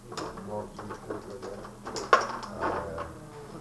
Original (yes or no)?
yes